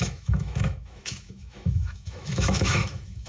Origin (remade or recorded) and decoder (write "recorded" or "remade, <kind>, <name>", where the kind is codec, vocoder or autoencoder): remade, autoencoder, DAC-VAE